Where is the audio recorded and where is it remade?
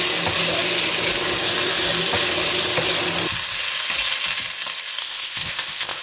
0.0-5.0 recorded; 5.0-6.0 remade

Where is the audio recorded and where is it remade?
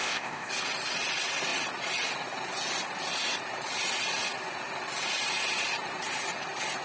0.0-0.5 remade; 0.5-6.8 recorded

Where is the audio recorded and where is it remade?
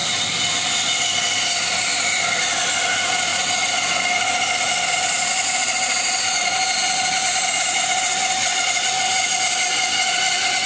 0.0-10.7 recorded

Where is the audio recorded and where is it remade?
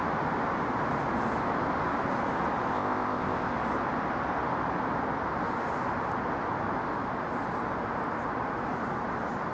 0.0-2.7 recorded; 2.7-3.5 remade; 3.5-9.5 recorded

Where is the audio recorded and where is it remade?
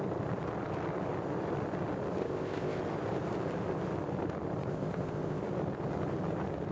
0.0-2.2 recorded; 2.2-2.8 remade; 2.8-4.7 recorded; 4.7-5.4 remade; 5.4-6.7 recorded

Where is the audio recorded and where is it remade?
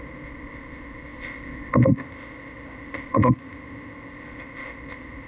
0.0-5.3 remade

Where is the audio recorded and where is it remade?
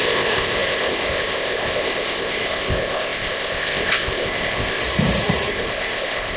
0.0-4.8 remade; 4.8-5.5 recorded; 5.5-6.4 remade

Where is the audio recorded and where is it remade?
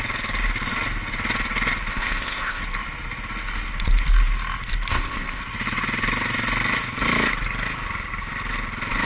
0.0-1.9 recorded; 1.9-2.6 remade; 2.6-4.9 recorded; 4.9-5.4 remade; 5.4-9.0 recorded